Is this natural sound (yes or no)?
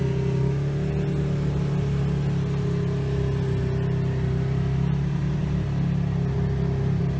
yes